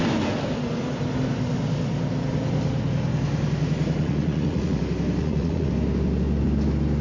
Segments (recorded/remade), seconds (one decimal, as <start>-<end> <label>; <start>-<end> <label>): 0.0-4.0 recorded; 4.0-4.8 remade; 4.8-5.2 recorded; 5.2-5.7 remade; 5.7-7.0 recorded